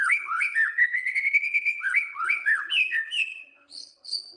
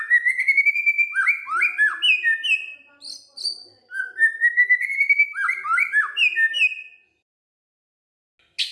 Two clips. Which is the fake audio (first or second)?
first